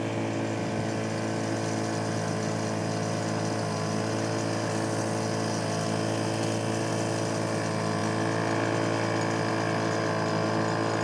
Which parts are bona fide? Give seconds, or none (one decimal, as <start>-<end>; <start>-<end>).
0.0-11.0